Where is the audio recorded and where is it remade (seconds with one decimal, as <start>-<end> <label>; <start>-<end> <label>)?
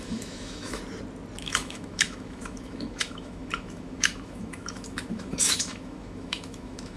0.0-0.8 remade; 0.8-1.4 recorded; 1.4-7.0 remade